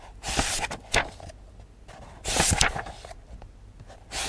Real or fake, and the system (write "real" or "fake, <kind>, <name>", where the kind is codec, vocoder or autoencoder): real